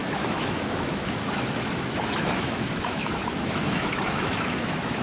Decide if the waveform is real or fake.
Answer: fake